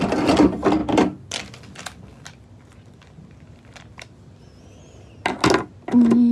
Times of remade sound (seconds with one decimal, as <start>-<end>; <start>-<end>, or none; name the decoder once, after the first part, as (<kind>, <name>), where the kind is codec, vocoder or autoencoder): none